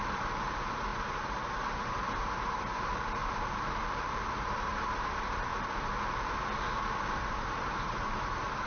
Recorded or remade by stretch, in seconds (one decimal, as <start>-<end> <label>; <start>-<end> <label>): 0.0-3.2 remade; 3.2-4.3 recorded; 4.3-5.5 remade; 5.5-7.1 recorded; 7.1-8.7 remade